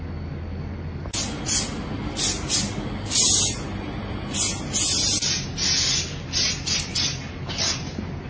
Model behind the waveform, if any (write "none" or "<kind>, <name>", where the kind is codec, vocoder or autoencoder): none